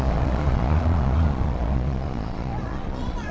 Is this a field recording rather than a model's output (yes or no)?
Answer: no